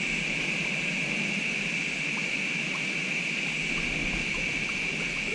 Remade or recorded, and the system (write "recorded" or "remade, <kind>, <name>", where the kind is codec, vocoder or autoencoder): recorded